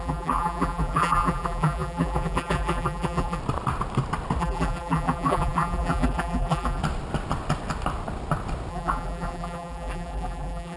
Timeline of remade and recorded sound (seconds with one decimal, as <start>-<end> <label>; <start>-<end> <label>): 0.0-3.4 remade; 3.4-4.4 recorded; 4.4-6.8 remade; 6.8-8.7 recorded; 8.7-10.8 remade